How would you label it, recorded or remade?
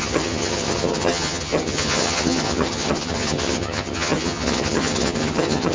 remade